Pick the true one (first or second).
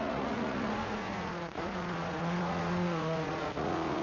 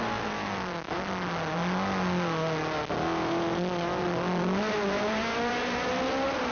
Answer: second